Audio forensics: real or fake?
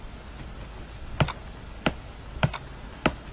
real